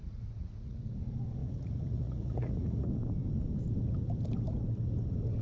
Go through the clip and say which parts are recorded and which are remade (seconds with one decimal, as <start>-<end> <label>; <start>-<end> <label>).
0.0-0.8 remade; 0.8-1.4 recorded; 1.4-2.9 remade; 2.9-5.4 recorded